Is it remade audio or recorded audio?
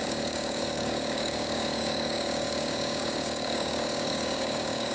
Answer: remade